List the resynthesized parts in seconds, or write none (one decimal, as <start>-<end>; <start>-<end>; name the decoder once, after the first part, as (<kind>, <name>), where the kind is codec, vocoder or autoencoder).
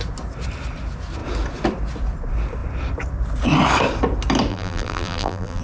4.5-5.6 (vocoder, BigVGAN v2)